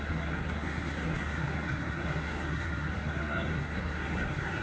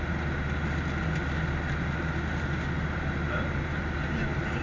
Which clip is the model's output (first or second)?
first